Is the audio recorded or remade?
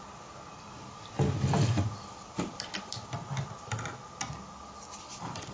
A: recorded